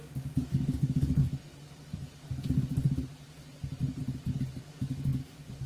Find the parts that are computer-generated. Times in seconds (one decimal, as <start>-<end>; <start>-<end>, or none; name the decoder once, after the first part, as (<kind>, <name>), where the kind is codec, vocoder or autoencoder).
0.0-1.2 (codec, DAC); 4.6-5.7